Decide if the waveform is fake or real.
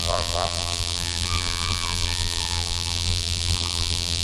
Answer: fake